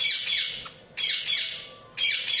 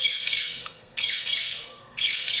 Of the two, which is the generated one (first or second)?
second